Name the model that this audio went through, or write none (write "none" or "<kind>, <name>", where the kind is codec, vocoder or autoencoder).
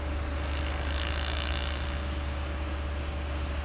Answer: none